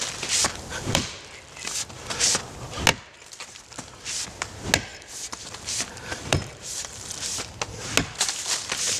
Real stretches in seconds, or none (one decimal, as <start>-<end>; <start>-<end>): 0.0-0.4; 1.2-4.9; 7.1-9.0